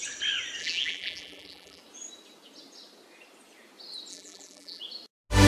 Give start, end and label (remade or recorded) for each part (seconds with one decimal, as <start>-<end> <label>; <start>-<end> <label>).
0.0-0.6 recorded; 0.6-1.8 remade; 1.8-4.1 recorded; 4.1-4.8 remade; 4.8-5.5 recorded